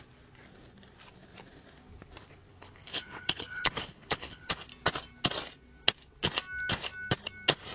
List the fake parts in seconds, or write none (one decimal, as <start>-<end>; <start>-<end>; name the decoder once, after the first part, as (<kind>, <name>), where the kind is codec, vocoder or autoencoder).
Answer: 2.5-4.5 (codec, HILCodec)